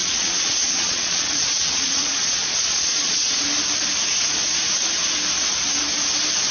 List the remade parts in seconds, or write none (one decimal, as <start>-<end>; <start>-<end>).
0.0-3.4